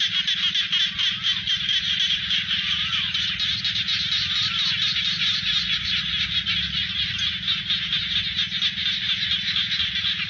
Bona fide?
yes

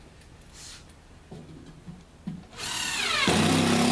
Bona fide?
yes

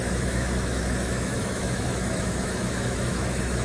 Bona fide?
no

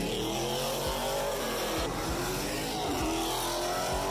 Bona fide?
yes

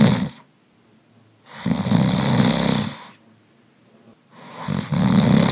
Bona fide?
yes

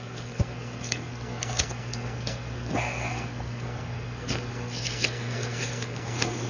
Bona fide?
no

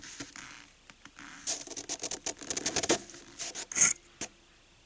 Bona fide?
yes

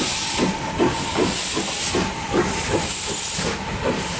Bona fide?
yes